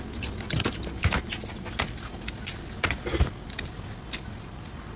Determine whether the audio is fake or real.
real